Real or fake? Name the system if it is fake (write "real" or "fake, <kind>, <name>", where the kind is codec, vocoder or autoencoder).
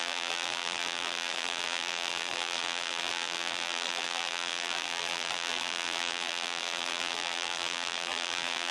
fake, vocoder, BigVGAN v2